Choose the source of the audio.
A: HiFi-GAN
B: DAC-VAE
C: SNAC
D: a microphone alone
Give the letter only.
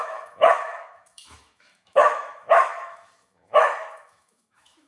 B